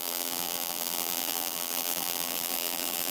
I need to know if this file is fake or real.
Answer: fake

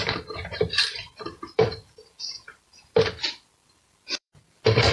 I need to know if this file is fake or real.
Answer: fake